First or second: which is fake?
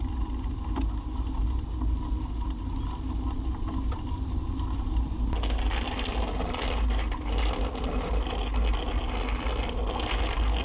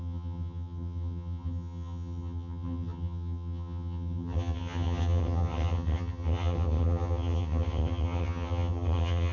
second